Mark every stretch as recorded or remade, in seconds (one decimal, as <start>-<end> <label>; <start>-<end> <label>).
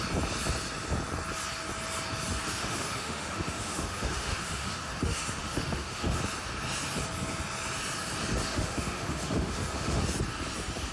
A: 0.0-2.6 recorded; 2.6-6.2 remade; 6.2-8.5 recorded; 8.5-10.0 remade; 10.0-10.9 recorded